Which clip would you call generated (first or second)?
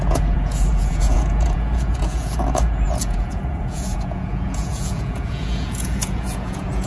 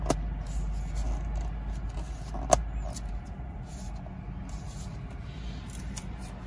first